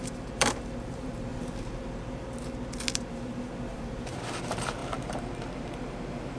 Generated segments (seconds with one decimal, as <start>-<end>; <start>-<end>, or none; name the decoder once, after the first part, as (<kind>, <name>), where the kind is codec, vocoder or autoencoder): 0.0-1.3 (vocoder, BigVGAN v2); 3.7-6.4